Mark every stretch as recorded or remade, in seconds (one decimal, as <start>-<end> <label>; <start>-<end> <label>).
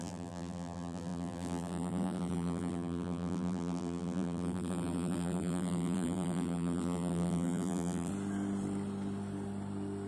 0.0-8.1 remade; 8.1-10.1 recorded